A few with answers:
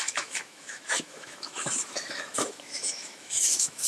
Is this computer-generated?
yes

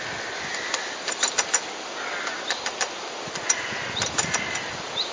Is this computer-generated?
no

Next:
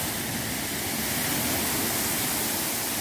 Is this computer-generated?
no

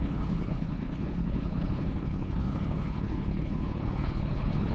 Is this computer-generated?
yes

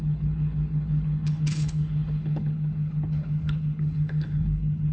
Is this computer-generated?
yes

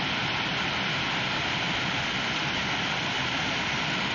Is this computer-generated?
no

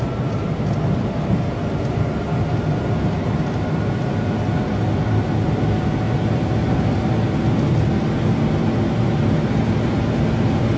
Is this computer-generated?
no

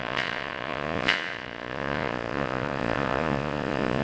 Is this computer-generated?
yes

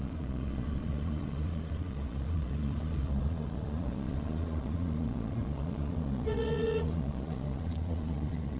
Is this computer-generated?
yes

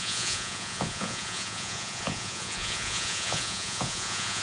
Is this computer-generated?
yes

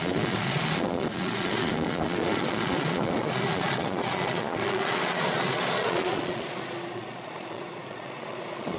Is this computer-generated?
yes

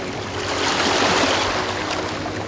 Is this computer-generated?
no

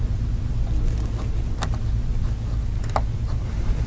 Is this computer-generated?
no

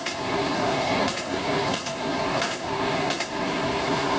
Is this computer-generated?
yes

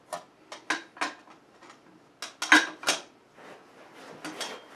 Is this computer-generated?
no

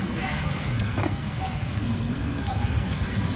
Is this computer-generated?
yes